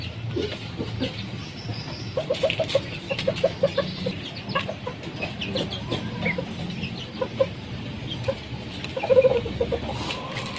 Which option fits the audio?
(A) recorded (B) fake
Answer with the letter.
B